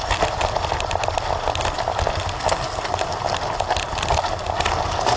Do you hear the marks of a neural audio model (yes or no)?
no